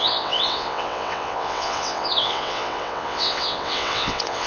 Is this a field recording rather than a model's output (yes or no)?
no